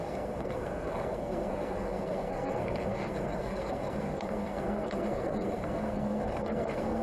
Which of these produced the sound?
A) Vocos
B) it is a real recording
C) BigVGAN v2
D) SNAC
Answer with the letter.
D